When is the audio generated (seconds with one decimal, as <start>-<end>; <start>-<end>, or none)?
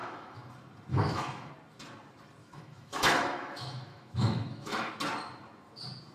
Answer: 0.0-0.5; 0.9-1.5; 2.4-4.9